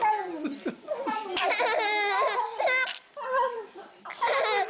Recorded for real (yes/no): yes